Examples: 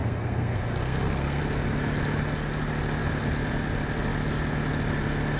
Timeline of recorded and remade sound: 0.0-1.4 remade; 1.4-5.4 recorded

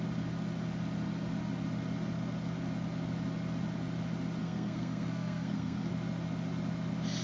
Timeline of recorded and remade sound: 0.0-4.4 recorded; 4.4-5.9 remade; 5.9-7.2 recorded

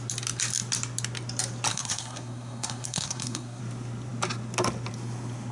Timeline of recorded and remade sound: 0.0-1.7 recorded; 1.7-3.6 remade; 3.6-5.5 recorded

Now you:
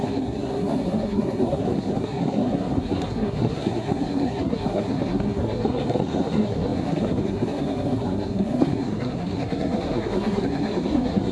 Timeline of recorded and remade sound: 0.0-11.3 remade